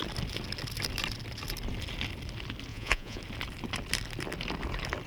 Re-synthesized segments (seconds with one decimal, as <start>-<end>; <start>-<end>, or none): 2.7-3.2